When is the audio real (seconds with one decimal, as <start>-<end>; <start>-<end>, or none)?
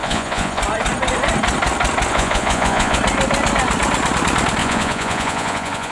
0.6-2.1; 3.0-4.6